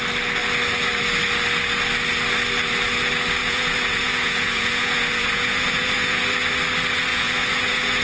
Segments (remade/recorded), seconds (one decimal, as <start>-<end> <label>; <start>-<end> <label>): 0.0-3.4 recorded; 3.4-6.2 remade; 6.2-7.1 recorded; 7.1-8.0 remade